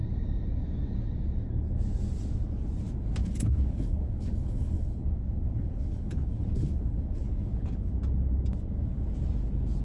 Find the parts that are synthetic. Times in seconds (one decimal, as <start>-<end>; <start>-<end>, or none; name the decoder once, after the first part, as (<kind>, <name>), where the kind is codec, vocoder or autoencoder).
3.2-7.9 (codec, HILCodec)